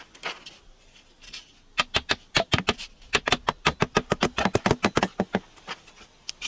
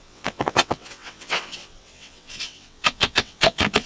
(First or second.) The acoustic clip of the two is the first